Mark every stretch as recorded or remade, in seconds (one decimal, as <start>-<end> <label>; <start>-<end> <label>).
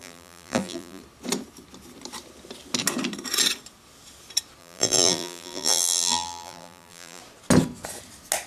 0.0-1.0 remade; 1.0-4.6 recorded; 4.6-7.2 remade; 7.2-8.5 recorded